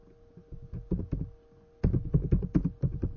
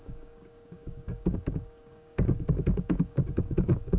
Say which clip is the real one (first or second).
first